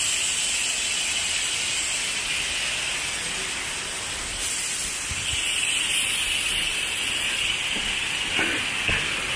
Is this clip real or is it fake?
real